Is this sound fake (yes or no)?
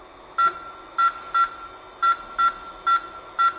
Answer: no